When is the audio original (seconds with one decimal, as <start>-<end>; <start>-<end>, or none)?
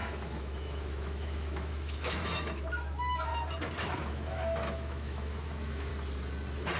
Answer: 3.3-3.8; 5.9-6.8